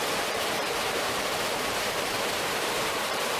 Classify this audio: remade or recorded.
remade